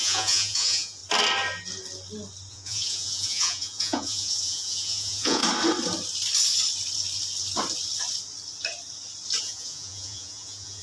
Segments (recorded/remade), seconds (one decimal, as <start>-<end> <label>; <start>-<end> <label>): 0.0-1.0 remade; 1.0-2.5 recorded; 2.5-5.4 remade; 5.4-9.4 recorded; 9.4-10.8 remade